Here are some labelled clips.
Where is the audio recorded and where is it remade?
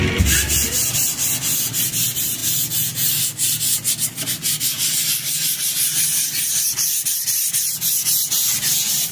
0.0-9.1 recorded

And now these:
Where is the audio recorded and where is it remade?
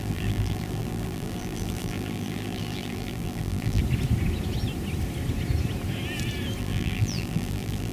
0.0-3.8 remade; 3.8-6.6 recorded; 6.6-7.9 remade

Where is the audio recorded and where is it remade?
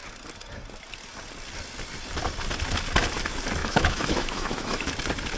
0.0-3.6 recorded; 3.6-4.9 remade; 4.9-5.4 recorded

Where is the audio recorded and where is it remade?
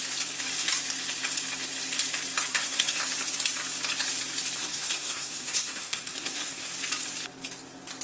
0.0-2.5 recorded; 2.5-3.0 remade; 3.0-4.6 recorded; 4.6-6.7 remade; 6.7-8.0 recorded